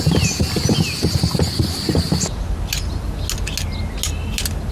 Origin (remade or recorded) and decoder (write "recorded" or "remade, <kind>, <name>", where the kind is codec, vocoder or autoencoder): recorded